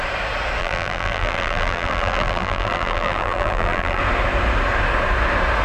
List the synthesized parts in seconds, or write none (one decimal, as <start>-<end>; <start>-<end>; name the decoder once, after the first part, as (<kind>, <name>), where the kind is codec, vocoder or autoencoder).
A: 0.6-4.0 (vocoder, BigVGAN v2)